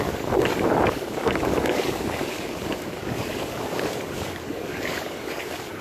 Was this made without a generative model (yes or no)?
no